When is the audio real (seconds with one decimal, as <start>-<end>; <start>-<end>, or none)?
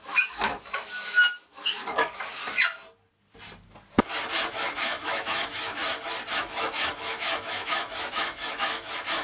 2.4-4.5; 5.8-6.4